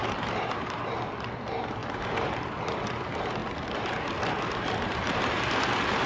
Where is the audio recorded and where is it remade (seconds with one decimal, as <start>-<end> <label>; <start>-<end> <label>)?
0.0-0.9 remade; 0.9-1.8 recorded; 1.8-2.3 remade; 2.3-6.1 recorded